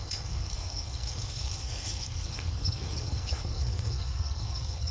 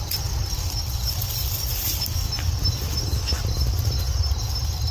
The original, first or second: second